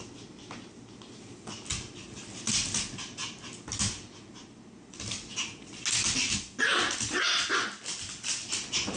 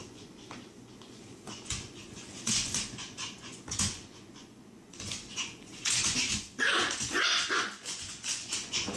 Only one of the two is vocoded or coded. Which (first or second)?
second